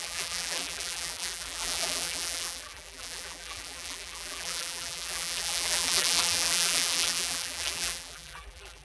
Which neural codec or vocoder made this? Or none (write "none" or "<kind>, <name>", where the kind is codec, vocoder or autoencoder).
vocoder, BigVGAN v2